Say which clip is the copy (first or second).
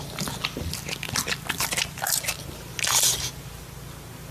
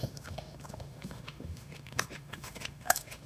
second